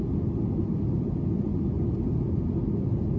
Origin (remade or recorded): recorded